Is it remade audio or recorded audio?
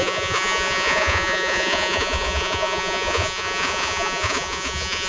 remade